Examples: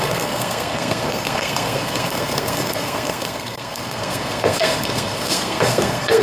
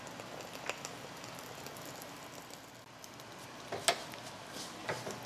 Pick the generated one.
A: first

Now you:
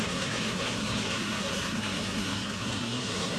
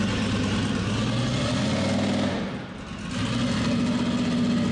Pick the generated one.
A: first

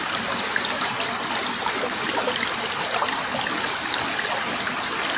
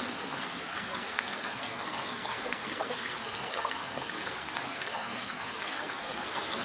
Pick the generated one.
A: second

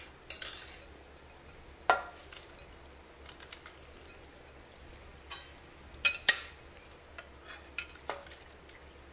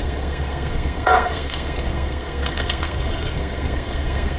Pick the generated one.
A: second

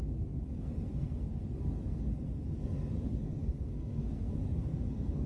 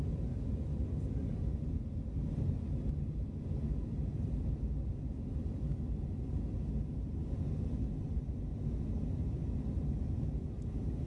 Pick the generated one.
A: first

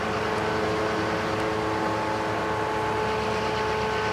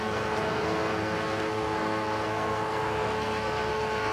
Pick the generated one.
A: second